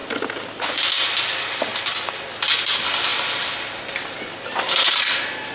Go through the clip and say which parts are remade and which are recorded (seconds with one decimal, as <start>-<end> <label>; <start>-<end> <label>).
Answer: 0.0-5.5 recorded